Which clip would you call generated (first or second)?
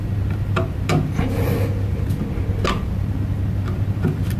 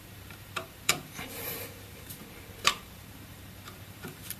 second